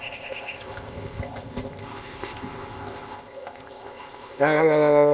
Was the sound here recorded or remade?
remade